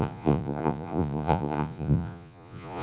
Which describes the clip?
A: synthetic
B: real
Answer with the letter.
A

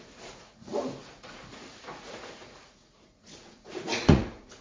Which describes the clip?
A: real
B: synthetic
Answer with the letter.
B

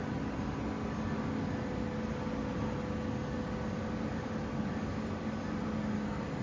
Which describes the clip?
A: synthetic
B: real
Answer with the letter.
B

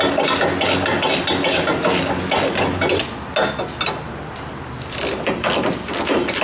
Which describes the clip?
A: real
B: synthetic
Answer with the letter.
A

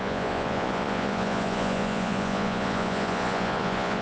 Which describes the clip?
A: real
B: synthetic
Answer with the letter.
B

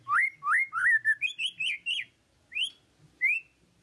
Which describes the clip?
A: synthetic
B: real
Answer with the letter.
B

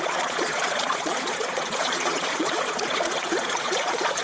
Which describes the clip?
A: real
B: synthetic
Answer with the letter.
B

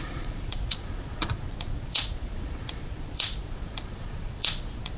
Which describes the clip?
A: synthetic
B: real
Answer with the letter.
A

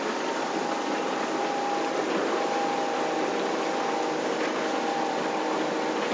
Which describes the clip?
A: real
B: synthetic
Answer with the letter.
A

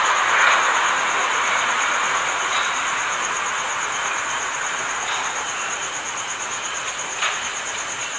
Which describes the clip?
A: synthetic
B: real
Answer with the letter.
A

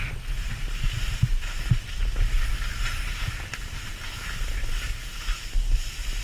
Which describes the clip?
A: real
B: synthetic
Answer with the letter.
A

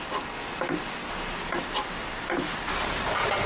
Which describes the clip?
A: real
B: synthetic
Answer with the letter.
A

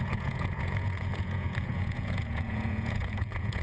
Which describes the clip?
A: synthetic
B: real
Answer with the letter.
A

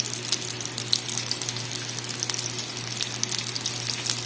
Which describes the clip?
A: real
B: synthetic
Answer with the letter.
A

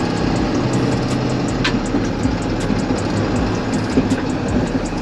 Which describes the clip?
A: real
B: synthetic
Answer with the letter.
A